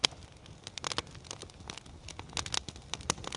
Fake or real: real